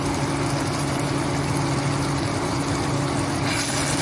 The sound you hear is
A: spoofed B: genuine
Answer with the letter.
B